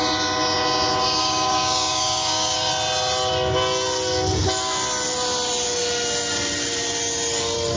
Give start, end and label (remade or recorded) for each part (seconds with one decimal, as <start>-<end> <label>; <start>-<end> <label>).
0.0-1.2 recorded; 1.2-2.7 remade; 2.7-7.8 recorded